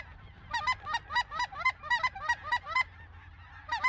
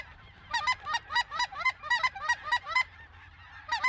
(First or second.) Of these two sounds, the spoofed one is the second